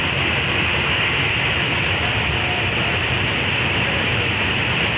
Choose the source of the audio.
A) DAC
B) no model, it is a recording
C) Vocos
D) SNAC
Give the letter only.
B